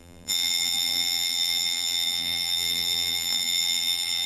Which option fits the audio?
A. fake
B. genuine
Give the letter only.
A